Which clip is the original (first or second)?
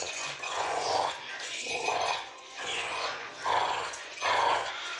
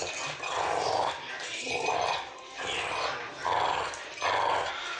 second